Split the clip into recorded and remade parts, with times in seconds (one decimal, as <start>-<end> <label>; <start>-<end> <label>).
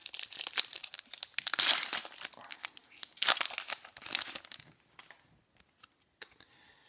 0.0-6.9 recorded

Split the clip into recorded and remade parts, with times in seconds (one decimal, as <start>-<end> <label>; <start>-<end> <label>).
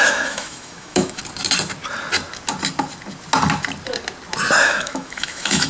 0.0-1.2 remade; 1.2-4.6 recorded; 4.6-5.7 remade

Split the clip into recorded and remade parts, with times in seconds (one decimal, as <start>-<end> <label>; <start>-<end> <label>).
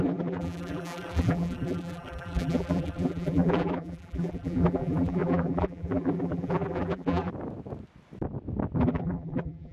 0.0-7.3 remade; 7.3-8.8 recorded; 8.8-9.7 remade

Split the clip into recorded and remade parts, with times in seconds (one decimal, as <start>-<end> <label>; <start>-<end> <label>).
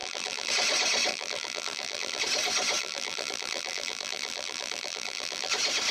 0.0-0.5 remade; 0.5-1.1 recorded; 1.1-2.2 remade; 2.2-2.8 recorded; 2.8-5.5 remade; 5.5-5.9 recorded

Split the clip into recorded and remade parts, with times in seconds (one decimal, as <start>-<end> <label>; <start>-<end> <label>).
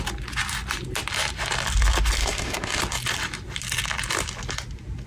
0.0-2.2 recorded; 2.2-2.8 remade; 2.8-5.1 recorded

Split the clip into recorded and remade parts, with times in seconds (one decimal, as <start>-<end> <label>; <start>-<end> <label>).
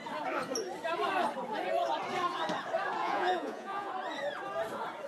0.0-3.0 recorded; 3.0-3.9 remade; 3.9-5.1 recorded